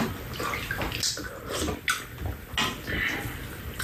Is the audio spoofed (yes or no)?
no